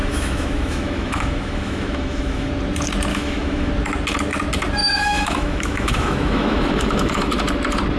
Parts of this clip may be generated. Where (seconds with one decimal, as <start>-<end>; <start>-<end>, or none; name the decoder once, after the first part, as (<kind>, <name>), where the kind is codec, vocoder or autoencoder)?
0.0-2.5 (autoencoder, DAC-VAE); 3.1-3.7; 4.8-7.3